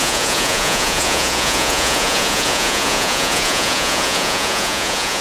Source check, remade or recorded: remade